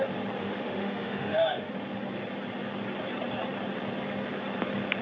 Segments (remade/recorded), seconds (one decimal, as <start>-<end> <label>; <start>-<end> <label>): 0.0-0.4 recorded; 0.4-1.7 remade; 1.7-5.0 recorded